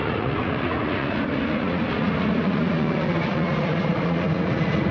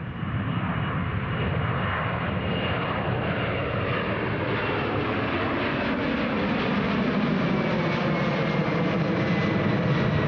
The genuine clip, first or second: second